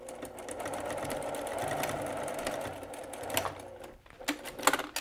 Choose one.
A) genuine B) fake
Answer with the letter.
A